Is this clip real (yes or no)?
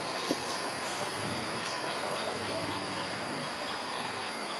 no